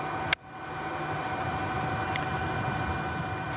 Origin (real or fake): real